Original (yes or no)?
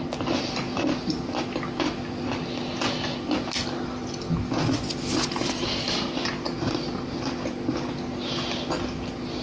yes